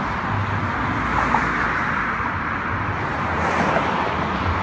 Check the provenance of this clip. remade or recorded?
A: recorded